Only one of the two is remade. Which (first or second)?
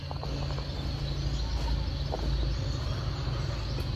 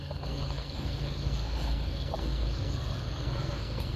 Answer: second